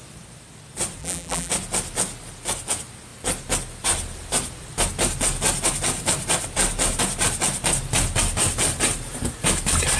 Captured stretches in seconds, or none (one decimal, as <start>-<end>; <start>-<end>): 0.0-1.0; 1.5-10.0